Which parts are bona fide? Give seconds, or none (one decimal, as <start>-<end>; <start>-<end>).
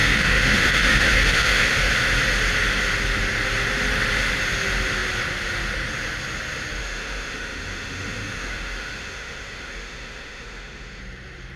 1.9-6.8; 11.0-11.6